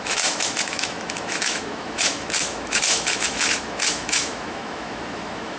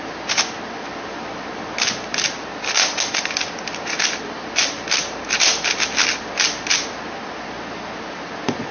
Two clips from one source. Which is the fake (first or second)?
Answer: first